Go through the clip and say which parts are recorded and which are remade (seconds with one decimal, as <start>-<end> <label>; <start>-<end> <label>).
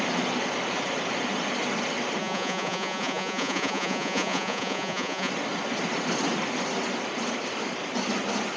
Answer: 0.0-2.2 recorded; 2.2-5.3 remade; 5.3-8.6 recorded